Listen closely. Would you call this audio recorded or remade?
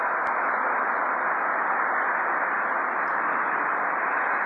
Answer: recorded